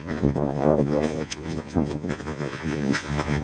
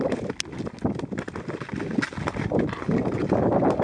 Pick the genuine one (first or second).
second